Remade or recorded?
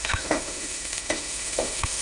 remade